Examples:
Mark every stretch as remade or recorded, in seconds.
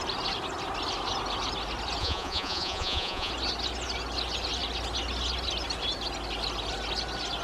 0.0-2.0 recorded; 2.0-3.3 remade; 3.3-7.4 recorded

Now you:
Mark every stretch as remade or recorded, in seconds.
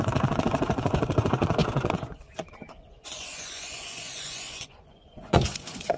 0.0-6.0 remade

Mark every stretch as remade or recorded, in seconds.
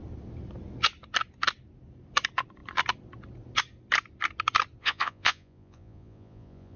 0.0-4.8 recorded; 4.8-6.8 remade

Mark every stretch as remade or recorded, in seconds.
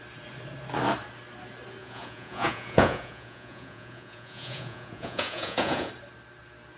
0.0-1.8 recorded; 1.8-5.9 remade; 5.9-6.8 recorded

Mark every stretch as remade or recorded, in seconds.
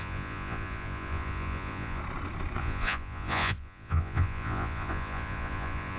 0.0-2.0 remade; 2.0-2.6 recorded; 2.6-6.0 remade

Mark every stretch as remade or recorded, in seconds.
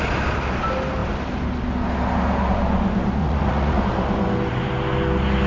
0.0-3.2 recorded; 3.2-3.8 remade; 3.8-5.5 recorded